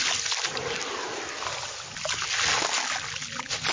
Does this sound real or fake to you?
real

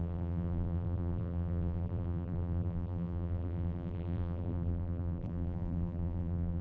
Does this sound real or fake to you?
fake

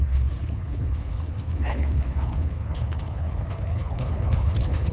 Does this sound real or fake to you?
fake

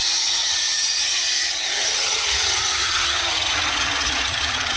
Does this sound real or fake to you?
fake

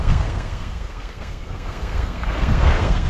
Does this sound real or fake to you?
fake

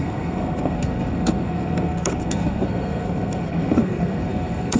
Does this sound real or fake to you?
fake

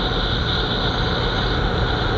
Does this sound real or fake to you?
real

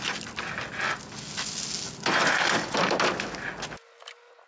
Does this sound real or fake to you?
real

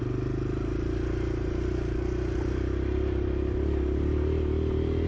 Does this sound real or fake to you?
real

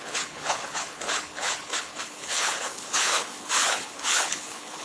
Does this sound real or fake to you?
fake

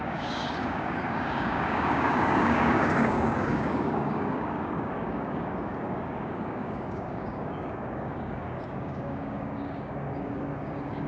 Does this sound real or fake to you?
fake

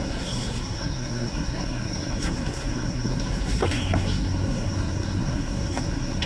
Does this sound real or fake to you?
fake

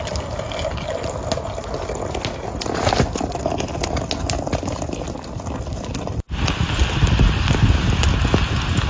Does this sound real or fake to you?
real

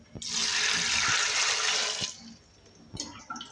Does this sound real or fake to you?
real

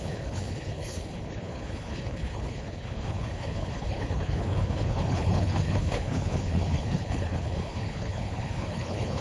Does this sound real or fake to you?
fake